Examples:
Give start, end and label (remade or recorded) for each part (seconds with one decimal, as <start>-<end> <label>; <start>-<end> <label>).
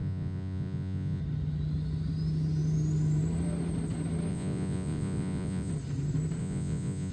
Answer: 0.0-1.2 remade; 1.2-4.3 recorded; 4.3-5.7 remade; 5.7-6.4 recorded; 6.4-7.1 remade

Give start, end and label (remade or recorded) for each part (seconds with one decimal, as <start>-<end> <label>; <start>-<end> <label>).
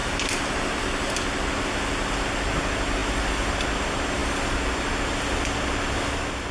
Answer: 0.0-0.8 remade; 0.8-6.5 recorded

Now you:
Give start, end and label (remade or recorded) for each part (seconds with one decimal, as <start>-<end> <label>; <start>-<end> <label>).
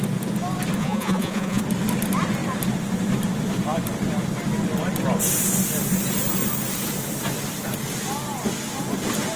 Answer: 0.0-0.8 recorded; 0.8-1.6 remade; 1.6-9.4 recorded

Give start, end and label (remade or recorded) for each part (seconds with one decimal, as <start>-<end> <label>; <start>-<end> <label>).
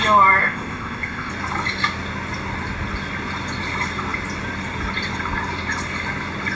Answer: 0.0-0.4 recorded; 0.4-1.3 remade; 1.3-6.5 recorded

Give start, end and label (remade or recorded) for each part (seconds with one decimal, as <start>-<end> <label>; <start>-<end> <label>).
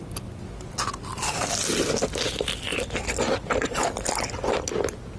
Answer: 0.0-5.2 recorded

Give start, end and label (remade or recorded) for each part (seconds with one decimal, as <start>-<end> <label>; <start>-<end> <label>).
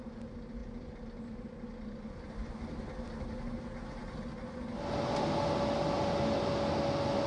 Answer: 0.0-7.3 recorded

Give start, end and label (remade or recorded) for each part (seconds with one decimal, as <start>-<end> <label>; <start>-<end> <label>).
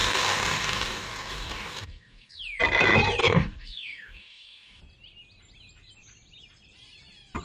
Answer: 0.0-2.4 remade; 2.4-3.2 recorded; 3.2-4.8 remade; 4.8-7.4 recorded